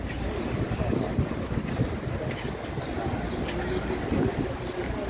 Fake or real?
real